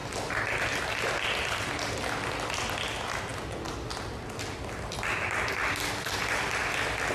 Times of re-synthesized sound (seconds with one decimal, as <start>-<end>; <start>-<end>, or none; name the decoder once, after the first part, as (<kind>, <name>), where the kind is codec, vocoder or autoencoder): none